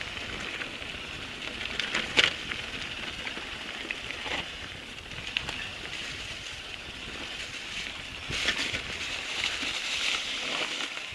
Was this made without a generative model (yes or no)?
yes